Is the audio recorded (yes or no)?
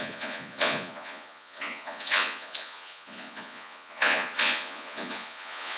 no